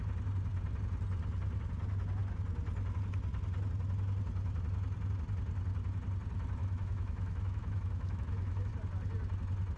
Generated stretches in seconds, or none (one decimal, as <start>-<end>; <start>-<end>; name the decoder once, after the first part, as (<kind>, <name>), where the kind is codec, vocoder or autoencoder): 6.6-8.7 (autoencoder, DAC-VAE)